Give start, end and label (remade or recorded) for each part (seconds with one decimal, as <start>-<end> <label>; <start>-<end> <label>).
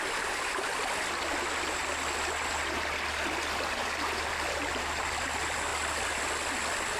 0.0-7.0 recorded